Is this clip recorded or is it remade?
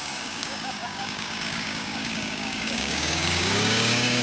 remade